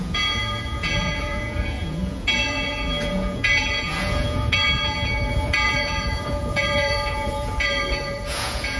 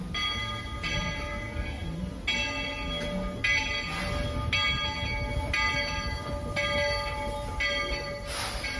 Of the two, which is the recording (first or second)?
second